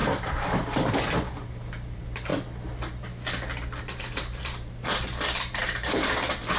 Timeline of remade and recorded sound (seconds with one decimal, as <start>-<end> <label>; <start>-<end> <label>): 0.0-2.3 remade; 2.3-3.8 recorded; 3.8-5.0 remade; 5.0-5.6 recorded; 5.6-6.6 remade